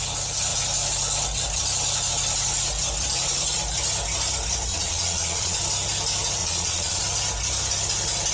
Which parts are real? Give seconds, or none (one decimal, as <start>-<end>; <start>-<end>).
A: 0.0-4.7; 5.6-6.4; 7.0-8.3